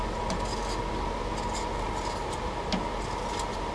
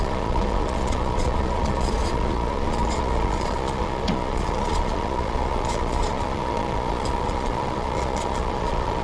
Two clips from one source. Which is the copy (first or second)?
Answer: second